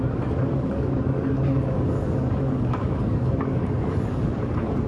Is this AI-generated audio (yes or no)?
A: yes